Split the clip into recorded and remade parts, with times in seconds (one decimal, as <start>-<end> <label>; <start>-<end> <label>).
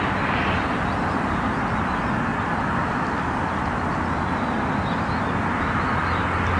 0.0-6.6 recorded